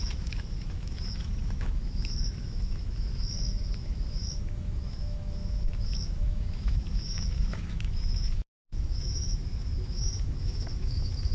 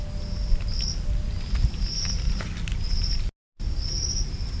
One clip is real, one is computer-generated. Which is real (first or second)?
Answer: second